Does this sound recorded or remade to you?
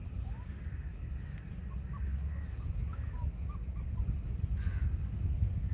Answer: recorded